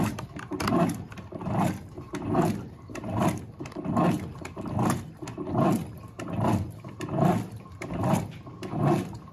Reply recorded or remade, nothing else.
recorded